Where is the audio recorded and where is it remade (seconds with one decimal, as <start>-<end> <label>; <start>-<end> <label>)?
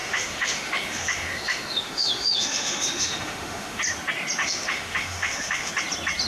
0.0-3.8 remade; 3.8-4.4 recorded; 4.4-5.7 remade; 5.7-6.3 recorded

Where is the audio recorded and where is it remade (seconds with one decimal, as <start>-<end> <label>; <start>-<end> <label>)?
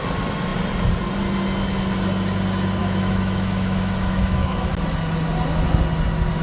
0.0-2.8 recorded; 2.8-4.7 remade; 4.7-6.4 recorded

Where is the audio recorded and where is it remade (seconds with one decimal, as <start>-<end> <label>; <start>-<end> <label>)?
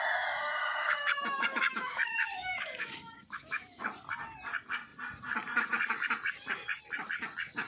0.0-0.6 recorded; 0.6-3.8 remade; 3.8-7.7 recorded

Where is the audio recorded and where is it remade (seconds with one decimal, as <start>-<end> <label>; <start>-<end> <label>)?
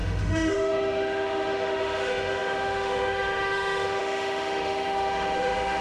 0.0-5.8 remade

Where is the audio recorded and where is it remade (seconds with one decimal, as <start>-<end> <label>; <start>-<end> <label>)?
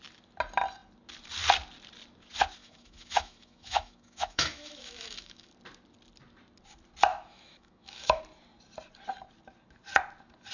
0.0-2.6 recorded; 2.6-5.5 remade; 5.5-7.1 recorded; 7.1-8.2 remade; 8.2-10.5 recorded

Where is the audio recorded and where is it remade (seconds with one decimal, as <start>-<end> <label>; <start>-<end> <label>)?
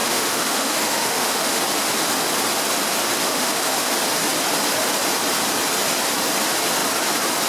0.0-1.6 remade; 1.6-3.2 recorded; 3.2-3.9 remade; 3.9-7.5 recorded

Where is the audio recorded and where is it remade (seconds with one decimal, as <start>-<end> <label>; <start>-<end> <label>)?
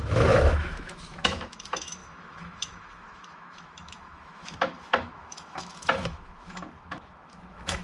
0.0-7.8 remade